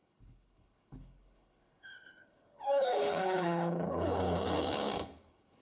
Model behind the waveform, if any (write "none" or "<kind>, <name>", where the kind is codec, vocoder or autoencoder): codec, HILCodec